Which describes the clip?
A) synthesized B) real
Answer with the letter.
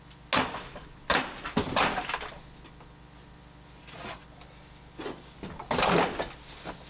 B